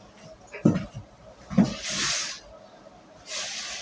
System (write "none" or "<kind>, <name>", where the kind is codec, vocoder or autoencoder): none